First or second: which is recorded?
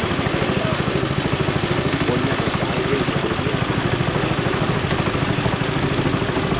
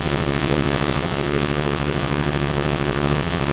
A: first